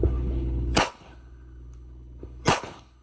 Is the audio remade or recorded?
remade